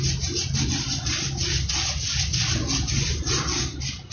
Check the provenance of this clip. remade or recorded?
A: recorded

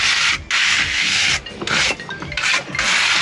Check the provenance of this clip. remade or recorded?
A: recorded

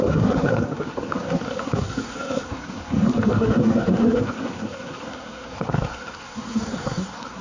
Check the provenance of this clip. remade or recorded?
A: remade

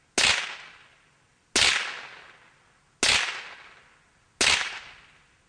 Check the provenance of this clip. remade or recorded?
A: recorded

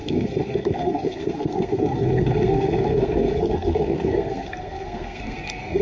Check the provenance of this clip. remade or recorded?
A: remade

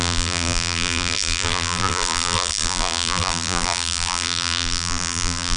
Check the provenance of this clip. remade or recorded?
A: remade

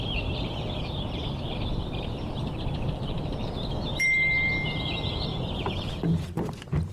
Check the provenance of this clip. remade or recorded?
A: remade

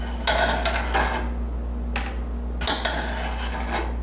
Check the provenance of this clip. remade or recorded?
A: recorded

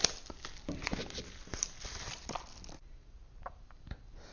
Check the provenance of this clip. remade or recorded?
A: recorded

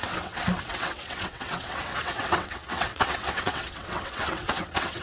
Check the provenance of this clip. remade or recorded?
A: remade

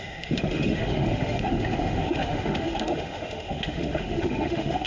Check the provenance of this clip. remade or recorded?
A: remade